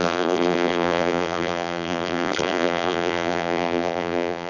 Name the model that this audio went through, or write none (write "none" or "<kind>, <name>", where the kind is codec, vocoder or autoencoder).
vocoder, BigVGAN v2